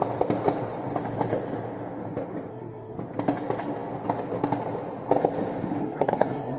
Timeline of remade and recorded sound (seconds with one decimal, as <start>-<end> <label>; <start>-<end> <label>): 0.0-2.5 recorded; 2.5-3.0 remade; 3.0-5.8 recorded; 5.8-6.6 remade